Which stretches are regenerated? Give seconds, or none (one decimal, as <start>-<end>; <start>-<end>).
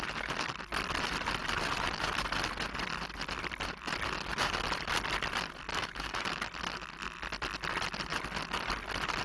5.7-6.4